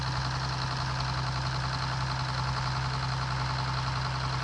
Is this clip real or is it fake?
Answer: real